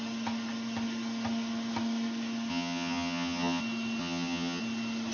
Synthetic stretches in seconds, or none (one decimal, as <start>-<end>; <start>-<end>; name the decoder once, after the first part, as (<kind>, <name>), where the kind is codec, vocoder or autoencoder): 2.5-3.6 (vocoder, HiFi-GAN); 4.0-4.6